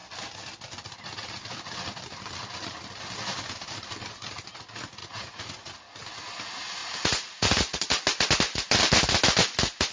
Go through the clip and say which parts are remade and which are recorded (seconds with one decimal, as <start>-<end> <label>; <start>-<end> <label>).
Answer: 0.0-5.0 recorded; 5.0-5.7 remade; 5.7-6.8 recorded; 6.8-7.8 remade; 7.8-9.9 recorded